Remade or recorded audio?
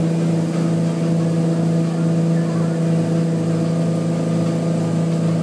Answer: recorded